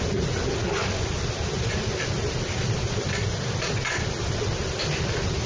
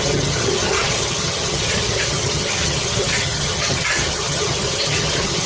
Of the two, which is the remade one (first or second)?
second